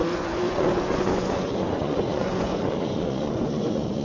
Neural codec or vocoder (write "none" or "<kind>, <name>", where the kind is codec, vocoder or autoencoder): vocoder, Vocos